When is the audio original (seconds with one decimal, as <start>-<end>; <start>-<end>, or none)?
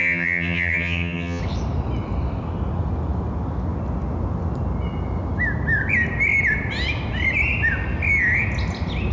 1.4-9.1